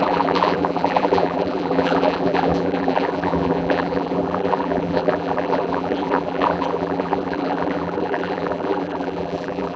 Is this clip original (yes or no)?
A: no